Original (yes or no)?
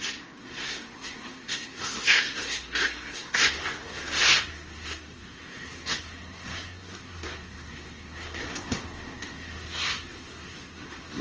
no